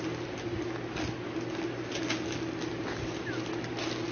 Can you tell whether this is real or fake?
real